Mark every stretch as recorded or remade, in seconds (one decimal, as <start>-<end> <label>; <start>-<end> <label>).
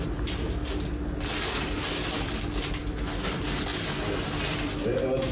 0.0-5.3 recorded